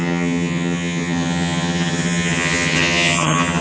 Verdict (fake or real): fake